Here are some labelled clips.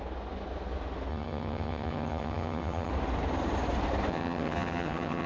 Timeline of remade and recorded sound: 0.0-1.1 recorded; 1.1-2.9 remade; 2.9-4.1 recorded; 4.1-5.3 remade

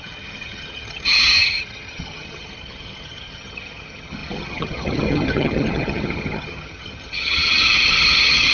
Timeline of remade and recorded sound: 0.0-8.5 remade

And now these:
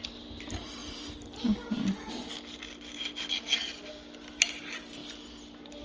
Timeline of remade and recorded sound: 0.0-5.8 recorded